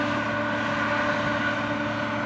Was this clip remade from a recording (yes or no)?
no